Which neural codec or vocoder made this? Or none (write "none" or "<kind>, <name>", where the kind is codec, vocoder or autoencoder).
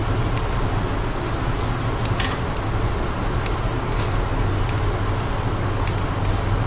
none